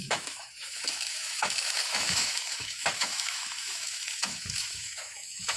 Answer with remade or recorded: remade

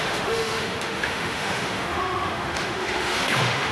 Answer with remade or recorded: remade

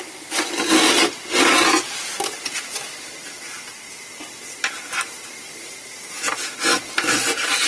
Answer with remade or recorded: recorded